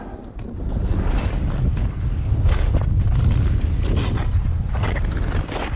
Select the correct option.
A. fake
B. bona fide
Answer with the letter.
B